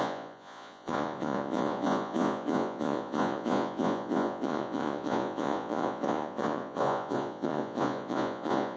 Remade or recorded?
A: remade